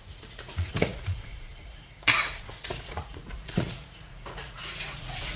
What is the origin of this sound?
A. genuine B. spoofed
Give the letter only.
B